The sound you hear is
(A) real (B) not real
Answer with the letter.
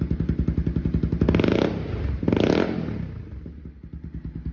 A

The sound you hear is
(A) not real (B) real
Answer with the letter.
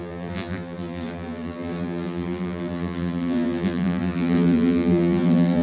A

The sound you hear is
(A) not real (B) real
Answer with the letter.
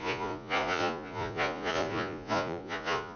A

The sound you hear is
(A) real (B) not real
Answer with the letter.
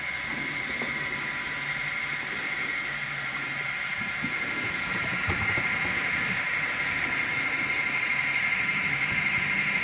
A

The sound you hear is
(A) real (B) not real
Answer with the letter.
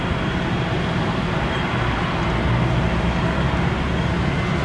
A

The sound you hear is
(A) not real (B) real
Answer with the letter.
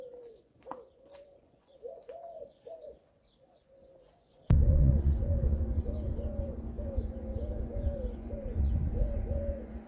A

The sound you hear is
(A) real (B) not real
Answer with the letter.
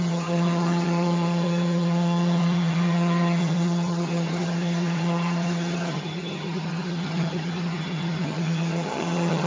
B